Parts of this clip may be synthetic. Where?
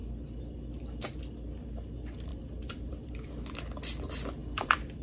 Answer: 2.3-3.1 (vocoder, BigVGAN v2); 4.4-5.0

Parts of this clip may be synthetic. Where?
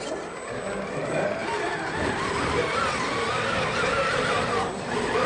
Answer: none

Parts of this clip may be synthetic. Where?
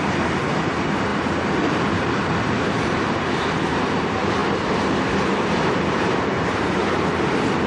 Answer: 0.0-4.4 (vocoder, BigVGAN v2); 5.3-6.8; 7.3-7.7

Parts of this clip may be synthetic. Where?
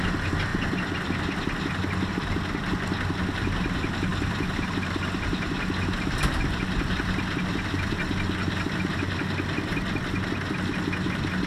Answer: none